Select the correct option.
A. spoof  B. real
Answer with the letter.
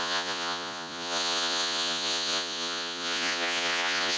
A